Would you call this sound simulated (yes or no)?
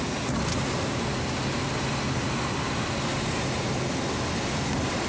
no